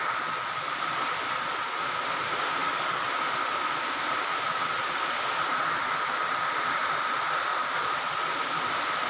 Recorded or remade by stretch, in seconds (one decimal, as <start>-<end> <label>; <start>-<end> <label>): 0.0-2.6 recorded; 2.6-3.1 remade; 3.1-9.1 recorded